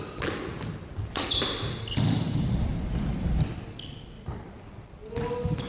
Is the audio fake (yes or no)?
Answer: no